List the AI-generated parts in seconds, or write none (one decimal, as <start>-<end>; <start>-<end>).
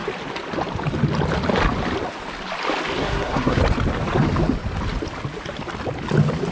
3.0-3.6